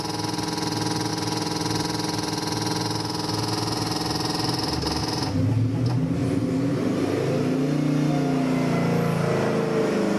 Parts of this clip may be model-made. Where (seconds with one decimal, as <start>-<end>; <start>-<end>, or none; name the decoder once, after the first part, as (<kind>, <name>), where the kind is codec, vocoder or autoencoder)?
none